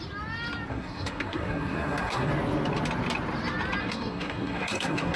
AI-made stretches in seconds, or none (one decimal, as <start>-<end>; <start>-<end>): 0.7-2.3; 3.8-5.2